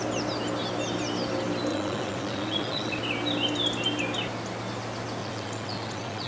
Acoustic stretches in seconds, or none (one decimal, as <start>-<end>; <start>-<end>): 0.0-1.7; 3.0-5.2

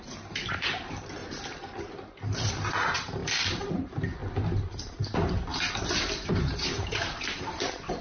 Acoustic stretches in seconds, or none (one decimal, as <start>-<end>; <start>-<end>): 1.2-1.8; 3.2-3.7; 4.2-4.8; 5.5-6.0

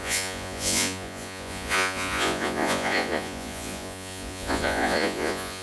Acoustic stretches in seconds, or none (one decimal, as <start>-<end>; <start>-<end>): none

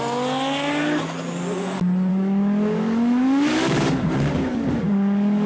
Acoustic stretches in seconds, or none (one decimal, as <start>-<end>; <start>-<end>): 0.0-2.1

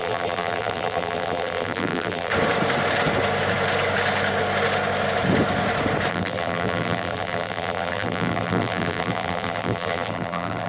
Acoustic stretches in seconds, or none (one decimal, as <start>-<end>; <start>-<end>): 2.3-6.1

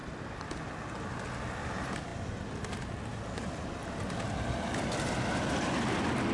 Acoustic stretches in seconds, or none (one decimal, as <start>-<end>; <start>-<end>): 0.0-6.3

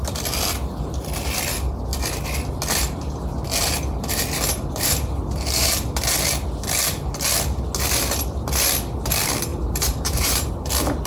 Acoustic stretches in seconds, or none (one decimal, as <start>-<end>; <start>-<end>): 0.0-9.5; 10.5-11.1

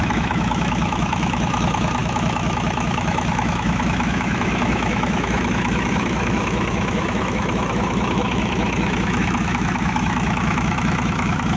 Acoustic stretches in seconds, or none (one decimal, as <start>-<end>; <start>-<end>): none